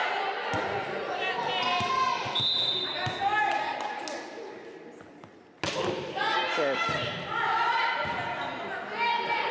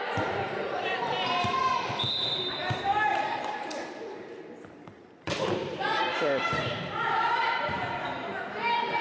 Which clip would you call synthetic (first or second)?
second